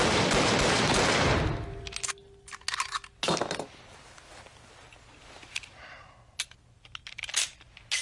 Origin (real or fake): real